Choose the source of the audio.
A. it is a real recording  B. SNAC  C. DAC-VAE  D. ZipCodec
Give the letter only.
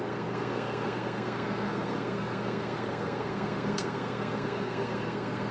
B